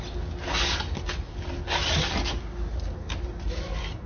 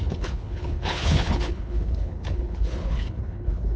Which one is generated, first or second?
second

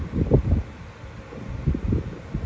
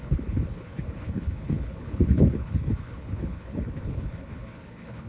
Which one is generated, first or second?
second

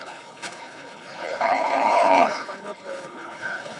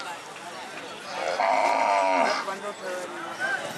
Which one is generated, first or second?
first